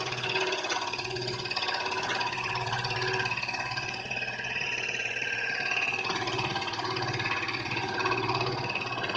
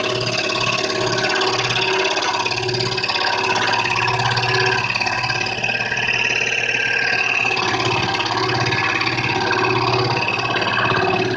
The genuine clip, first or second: second